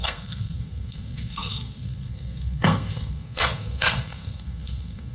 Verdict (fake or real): fake